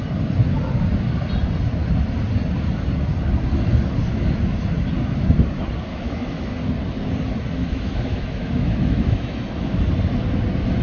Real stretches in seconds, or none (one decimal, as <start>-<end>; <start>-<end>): 0.0-5.9; 6.5-7.6; 9.8-10.8

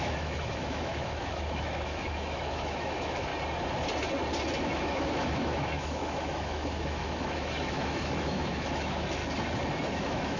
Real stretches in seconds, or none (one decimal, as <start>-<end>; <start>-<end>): 3.3-4.6; 9.2-9.9

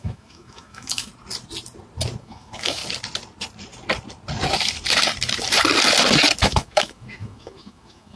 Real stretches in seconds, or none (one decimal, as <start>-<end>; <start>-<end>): 1.1-2.2; 2.8-6.4

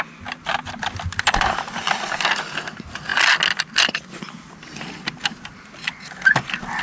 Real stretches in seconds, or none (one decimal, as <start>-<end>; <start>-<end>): 0.0-6.8

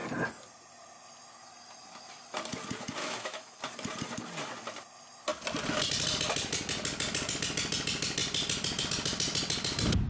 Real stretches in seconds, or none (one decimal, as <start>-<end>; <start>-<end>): 0.0-3.0; 3.6-10.1

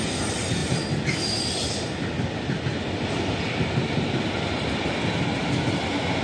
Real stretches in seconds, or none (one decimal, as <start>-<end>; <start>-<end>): 0.0-6.2

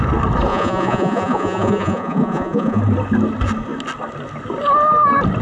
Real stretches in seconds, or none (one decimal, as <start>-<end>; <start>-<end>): 0.0-0.5; 2.8-5.4